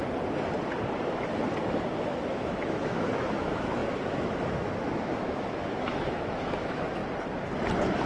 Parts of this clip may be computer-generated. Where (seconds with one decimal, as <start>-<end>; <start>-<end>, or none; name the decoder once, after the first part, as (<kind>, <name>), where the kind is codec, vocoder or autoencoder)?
2.1-7.0 (autoencoder, DAC-VAE)